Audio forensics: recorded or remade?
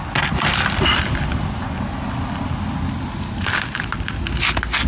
recorded